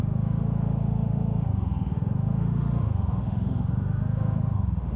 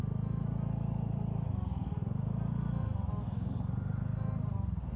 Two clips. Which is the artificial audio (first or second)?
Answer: first